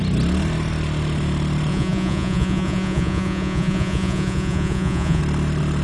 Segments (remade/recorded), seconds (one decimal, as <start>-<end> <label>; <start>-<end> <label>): 0.0-1.7 recorded; 1.7-5.2 remade; 5.2-5.8 recorded